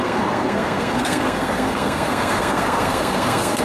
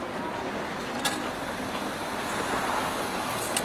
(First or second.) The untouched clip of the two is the second